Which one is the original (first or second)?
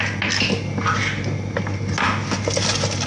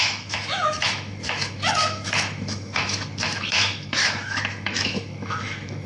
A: first